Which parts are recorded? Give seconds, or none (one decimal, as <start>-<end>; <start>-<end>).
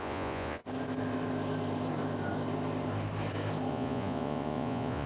0.6-3.7